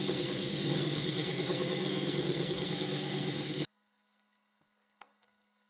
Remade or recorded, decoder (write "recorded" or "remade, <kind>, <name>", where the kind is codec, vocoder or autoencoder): remade, codec, SNAC